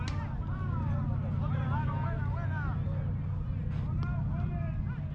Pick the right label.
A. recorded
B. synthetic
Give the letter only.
A